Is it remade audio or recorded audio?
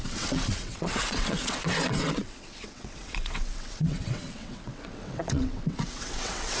remade